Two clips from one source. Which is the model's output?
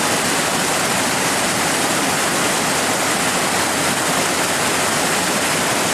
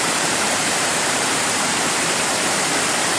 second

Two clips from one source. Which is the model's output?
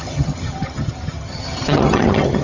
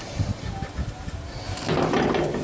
first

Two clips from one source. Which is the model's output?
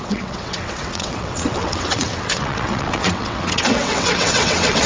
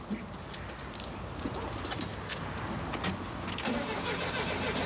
first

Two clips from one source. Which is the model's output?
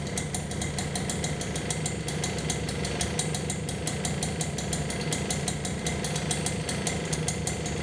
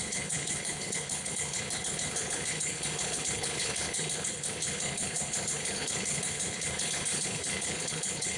second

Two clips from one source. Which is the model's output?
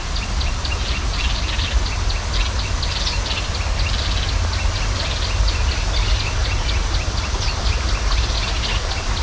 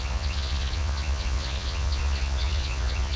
second